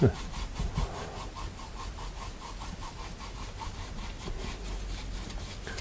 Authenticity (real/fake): real